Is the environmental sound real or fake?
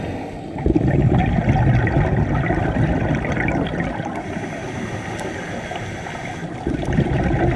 real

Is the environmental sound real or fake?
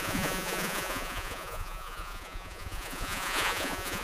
fake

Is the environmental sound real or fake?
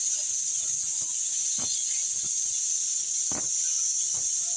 real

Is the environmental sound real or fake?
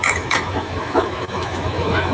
fake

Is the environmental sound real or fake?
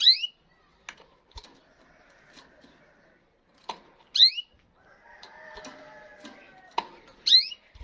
real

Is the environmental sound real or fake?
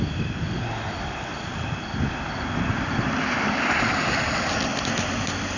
real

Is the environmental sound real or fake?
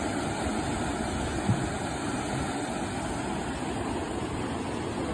real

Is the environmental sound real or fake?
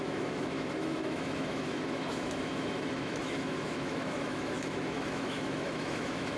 fake